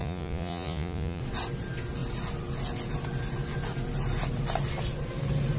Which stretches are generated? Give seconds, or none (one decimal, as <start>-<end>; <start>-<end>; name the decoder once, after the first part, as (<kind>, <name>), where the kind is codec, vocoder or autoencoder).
0.0-1.2 (vocoder, Vocos)